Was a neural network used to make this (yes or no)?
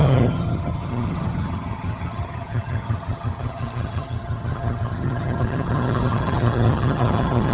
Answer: yes